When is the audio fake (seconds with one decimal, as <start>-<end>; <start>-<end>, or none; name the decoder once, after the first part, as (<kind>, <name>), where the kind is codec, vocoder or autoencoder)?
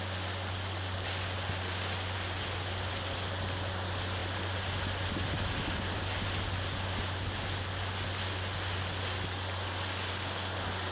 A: none